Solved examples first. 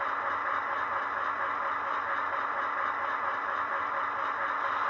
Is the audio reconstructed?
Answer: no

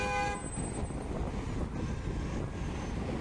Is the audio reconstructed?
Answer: no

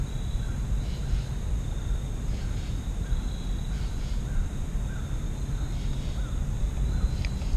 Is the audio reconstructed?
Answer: no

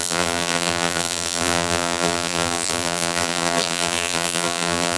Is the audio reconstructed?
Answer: yes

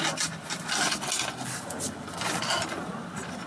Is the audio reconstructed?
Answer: no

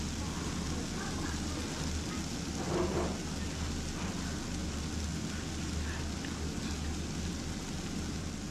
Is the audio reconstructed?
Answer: no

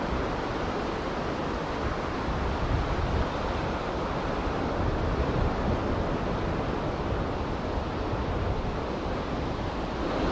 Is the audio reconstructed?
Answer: no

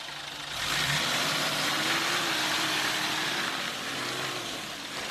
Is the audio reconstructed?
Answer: no